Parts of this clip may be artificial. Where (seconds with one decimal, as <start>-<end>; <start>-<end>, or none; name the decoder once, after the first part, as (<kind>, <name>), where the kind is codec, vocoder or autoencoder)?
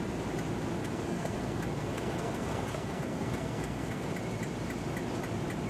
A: 0.8-4.1 (codec, SNAC)